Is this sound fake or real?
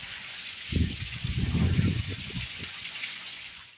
fake